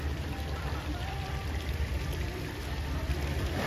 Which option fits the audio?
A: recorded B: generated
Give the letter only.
B